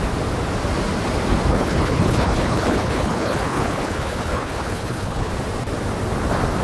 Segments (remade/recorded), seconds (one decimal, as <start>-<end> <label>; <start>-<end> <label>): 0.0-1.5 recorded; 1.5-5.3 remade; 5.3-6.6 recorded

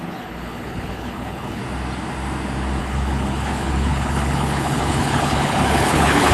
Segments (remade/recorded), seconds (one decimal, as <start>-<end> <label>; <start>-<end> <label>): 0.0-1.6 remade; 1.6-2.8 recorded; 2.8-6.3 remade

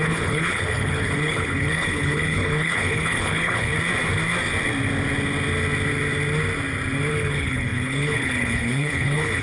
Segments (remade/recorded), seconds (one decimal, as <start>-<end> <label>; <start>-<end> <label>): 0.0-3.7 remade; 3.7-7.1 recorded; 7.1-9.4 remade

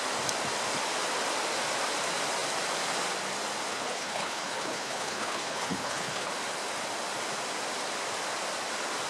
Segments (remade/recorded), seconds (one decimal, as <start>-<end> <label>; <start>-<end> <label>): 0.0-3.7 recorded; 3.7-6.3 remade; 6.3-9.1 recorded

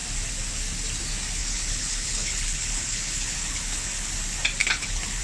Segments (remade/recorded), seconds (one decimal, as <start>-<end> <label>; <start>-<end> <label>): 0.0-1.4 recorded; 1.4-4.1 remade; 4.1-4.6 recorded; 4.6-5.2 remade

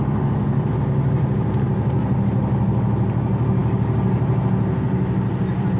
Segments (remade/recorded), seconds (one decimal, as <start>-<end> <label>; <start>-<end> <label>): 0.0-5.8 recorded